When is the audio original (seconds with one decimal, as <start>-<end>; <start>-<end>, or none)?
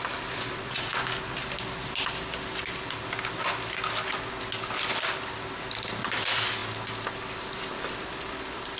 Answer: 0.9-5.9; 6.6-7.2